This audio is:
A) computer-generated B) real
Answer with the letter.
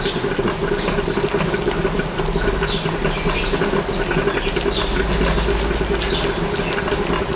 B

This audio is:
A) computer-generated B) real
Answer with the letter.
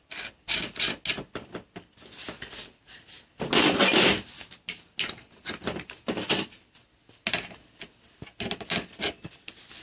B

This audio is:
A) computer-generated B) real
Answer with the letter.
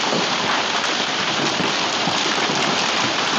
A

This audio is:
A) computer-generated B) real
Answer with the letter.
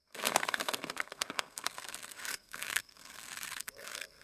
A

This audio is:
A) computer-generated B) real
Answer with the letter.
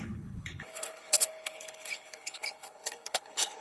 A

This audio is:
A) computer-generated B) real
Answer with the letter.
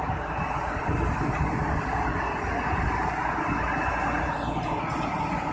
B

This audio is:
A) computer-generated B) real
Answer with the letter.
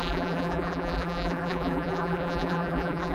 A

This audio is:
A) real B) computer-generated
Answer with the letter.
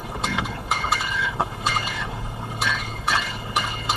B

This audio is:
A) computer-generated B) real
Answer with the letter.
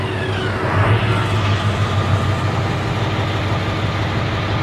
B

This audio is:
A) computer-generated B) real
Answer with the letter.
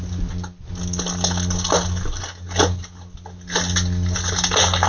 B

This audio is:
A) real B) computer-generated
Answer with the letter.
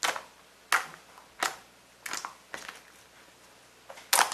A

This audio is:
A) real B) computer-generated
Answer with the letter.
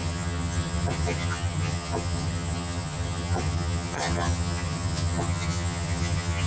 B